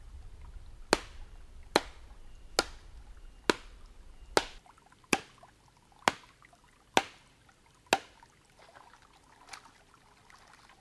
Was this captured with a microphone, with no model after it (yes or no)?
yes